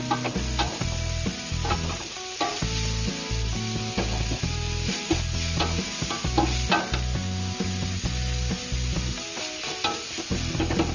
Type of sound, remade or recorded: recorded